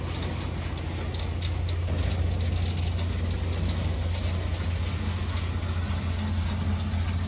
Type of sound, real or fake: real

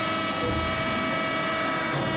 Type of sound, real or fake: real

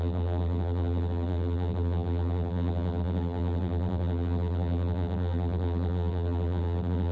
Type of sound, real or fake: fake